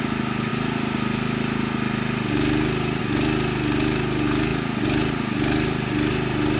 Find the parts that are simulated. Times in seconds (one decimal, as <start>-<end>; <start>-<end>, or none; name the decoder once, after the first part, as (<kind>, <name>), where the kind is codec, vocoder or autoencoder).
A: none